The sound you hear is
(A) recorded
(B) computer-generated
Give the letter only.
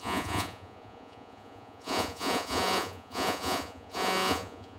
B